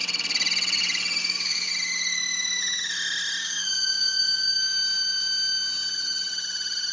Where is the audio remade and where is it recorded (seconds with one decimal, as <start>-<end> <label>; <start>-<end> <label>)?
0.0-1.2 recorded; 1.2-1.7 remade; 1.7-3.4 recorded; 3.4-4.6 remade; 4.6-6.9 recorded